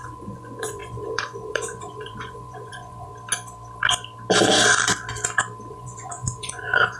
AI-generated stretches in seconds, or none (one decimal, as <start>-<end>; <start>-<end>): 0.0-3.1; 5.7-7.0